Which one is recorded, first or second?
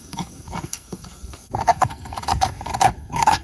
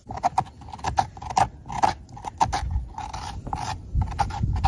second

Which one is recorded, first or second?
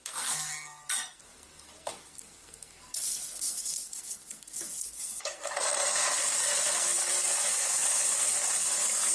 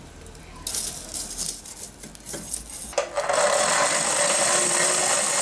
second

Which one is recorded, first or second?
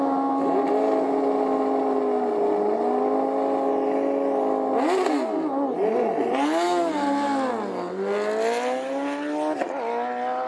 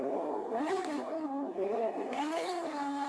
first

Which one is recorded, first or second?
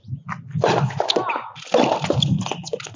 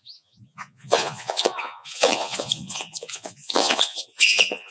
first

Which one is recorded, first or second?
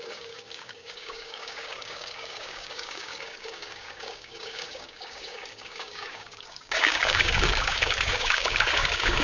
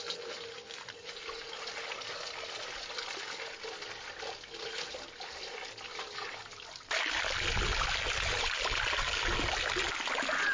second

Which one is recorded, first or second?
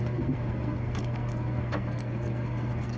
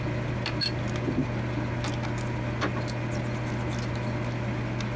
second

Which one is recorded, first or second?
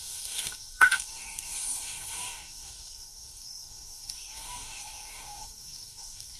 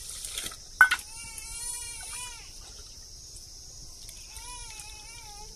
second